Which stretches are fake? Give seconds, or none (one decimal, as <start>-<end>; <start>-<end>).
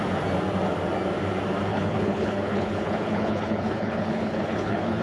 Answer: 1.7-5.0